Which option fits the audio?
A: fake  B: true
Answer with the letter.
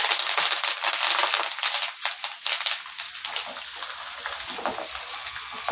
B